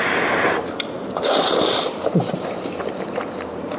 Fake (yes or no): yes